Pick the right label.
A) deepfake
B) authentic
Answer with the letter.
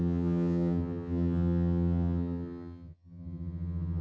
A